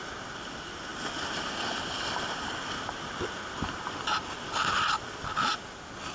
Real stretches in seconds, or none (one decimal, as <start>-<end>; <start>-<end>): 0.0-6.1